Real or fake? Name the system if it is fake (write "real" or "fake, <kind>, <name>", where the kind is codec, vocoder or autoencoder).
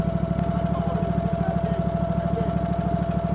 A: real